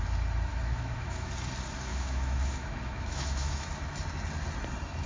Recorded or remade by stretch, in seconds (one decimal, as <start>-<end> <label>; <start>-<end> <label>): 0.0-0.5 recorded; 0.5-1.3 remade; 1.3-1.9 recorded; 1.9-3.7 remade; 3.7-5.1 recorded

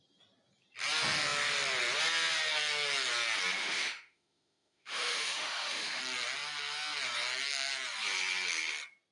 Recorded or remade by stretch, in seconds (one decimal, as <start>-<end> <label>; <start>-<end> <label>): 0.0-3.6 recorded; 3.6-6.0 remade; 6.0-9.1 recorded

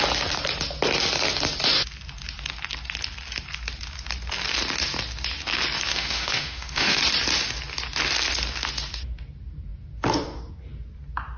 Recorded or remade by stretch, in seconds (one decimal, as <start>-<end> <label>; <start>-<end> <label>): 0.0-5.9 recorded; 5.9-7.0 remade; 7.0-11.4 recorded

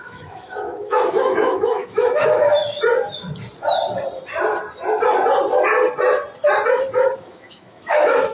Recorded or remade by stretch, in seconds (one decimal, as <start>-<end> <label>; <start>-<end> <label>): 0.0-2.6 remade; 2.6-7.2 recorded; 7.2-8.3 remade